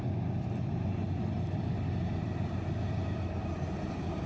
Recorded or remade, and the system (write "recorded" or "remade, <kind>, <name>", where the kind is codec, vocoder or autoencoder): recorded